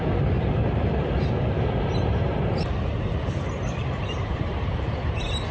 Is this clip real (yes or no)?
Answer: no